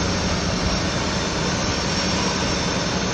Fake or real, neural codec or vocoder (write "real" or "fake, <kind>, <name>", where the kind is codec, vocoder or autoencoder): real